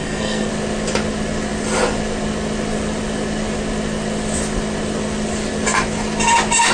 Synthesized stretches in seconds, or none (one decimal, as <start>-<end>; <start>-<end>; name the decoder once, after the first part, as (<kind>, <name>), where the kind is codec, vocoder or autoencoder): 0.0-0.5 (codec, SNAC)